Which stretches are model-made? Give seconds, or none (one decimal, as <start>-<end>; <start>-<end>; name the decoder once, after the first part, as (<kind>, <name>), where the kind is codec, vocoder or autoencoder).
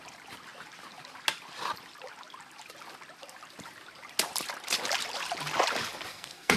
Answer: 6.1-6.6 (codec, SNAC)